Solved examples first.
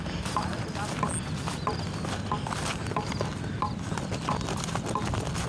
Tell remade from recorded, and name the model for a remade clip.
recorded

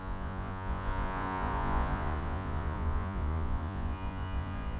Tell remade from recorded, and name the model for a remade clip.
remade, vocoder, Vocos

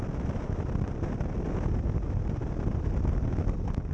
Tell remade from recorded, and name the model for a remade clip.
recorded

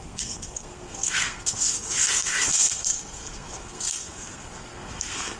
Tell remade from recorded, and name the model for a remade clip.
remade, codec, SNAC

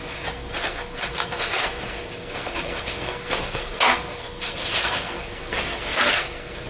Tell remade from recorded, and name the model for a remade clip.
remade, codec, SNAC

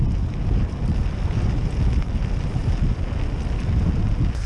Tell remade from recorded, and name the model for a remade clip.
recorded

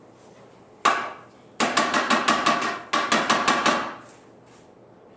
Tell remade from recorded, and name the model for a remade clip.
recorded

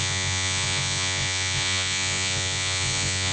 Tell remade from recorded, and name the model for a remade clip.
remade, vocoder, Vocos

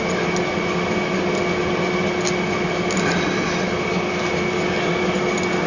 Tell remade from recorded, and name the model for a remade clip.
recorded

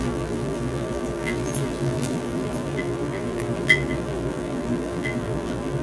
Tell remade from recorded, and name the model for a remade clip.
remade, vocoder, BigVGAN v2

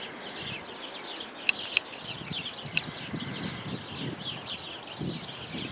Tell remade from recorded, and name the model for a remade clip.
recorded